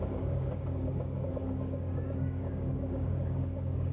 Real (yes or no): no